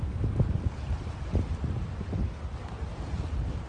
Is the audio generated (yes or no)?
no